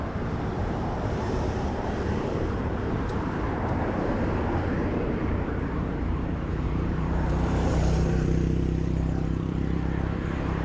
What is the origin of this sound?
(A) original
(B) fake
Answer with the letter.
B